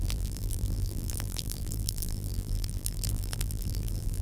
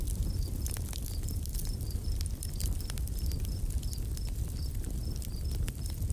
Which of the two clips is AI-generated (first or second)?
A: first